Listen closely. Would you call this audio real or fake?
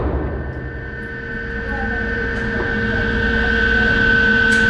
real